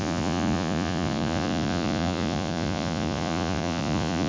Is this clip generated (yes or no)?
yes